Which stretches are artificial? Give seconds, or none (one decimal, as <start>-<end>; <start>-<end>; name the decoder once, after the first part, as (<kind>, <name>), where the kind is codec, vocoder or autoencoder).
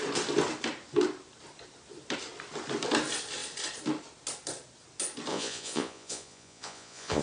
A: 5.3-7.2 (vocoder, Vocos)